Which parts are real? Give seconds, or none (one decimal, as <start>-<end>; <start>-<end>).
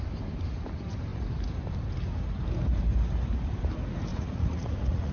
0.0-4.1